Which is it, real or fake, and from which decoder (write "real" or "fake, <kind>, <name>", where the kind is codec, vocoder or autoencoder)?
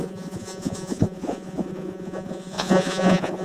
fake, vocoder, Vocos